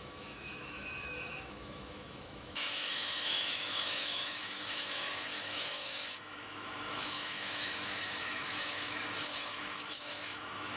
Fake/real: fake